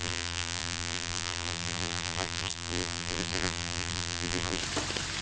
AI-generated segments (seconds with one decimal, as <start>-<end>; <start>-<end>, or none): 0.0-4.6